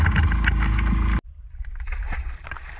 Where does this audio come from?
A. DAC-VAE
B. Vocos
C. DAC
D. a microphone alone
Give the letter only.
D